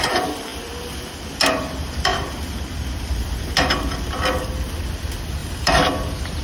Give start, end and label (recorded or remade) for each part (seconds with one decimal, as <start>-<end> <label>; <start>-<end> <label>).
0.0-5.4 recorded; 5.4-6.4 remade